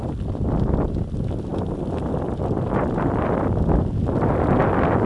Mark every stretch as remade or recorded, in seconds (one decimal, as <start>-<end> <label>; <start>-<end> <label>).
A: 0.0-5.1 recorded